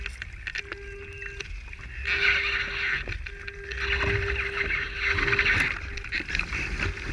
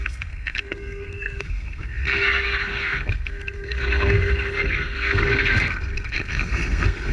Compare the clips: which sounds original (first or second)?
first